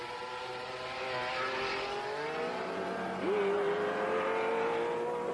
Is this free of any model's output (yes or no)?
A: yes